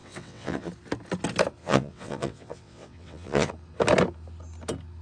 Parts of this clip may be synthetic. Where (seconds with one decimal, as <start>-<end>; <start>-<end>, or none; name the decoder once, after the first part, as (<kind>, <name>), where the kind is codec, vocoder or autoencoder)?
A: 0.0-0.7 (vocoder, WaveNeXt); 1.6-3.5